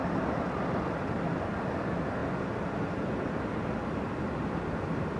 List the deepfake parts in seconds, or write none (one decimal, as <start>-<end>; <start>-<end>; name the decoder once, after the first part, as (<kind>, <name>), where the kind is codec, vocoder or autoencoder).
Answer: 0.0-0.6 (vocoder, BigVGAN v2)